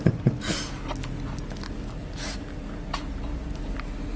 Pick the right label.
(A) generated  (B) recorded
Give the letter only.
B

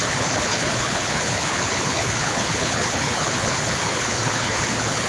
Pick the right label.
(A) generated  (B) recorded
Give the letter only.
A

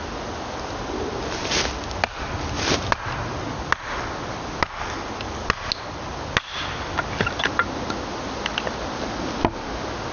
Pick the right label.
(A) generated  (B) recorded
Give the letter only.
B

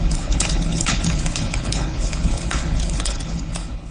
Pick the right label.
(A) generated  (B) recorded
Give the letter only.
A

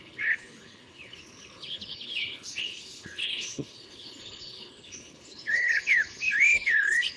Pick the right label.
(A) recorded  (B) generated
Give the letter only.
B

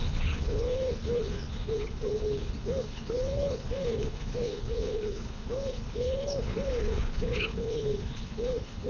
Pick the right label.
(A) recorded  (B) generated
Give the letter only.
B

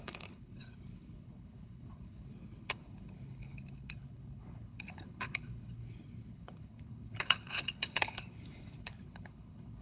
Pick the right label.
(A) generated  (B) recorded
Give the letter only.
A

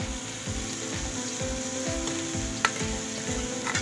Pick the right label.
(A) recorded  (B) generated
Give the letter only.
A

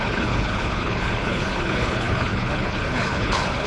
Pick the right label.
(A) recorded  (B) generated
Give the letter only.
B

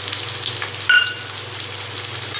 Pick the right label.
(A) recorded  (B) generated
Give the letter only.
A